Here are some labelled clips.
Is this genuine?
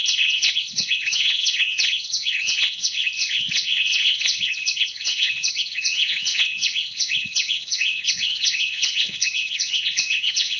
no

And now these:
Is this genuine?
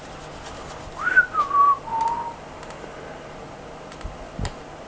yes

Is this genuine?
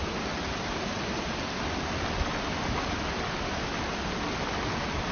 yes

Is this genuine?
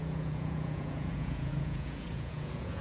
no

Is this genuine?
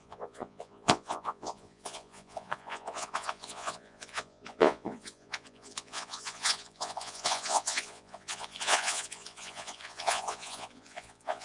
no